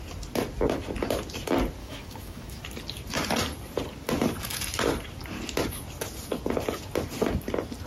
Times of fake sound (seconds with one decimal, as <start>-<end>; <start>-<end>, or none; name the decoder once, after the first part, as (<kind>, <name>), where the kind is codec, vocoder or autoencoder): 1.8-2.6 (autoencoder, DAC-VAE)